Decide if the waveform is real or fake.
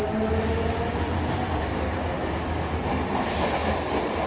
real